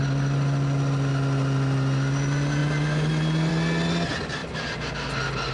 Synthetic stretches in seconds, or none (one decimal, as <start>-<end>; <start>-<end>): none